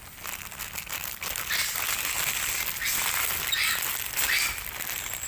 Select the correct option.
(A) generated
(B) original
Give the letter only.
B